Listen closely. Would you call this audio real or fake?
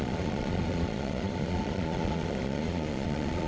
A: fake